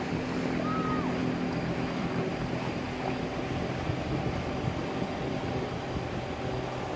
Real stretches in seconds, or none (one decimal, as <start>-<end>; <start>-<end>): 0.0-7.0